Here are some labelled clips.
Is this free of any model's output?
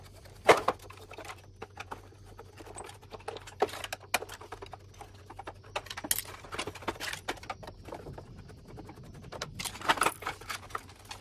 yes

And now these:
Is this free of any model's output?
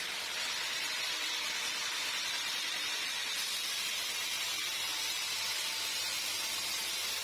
yes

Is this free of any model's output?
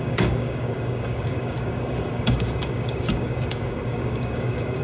no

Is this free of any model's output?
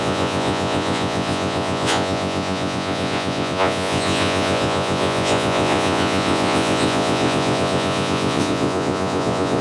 no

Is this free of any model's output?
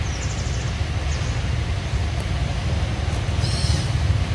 yes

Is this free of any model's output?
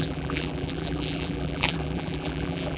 no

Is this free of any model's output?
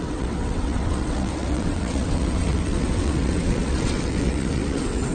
no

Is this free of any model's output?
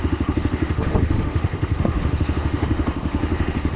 no